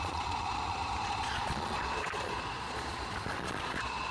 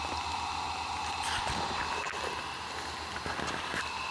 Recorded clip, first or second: second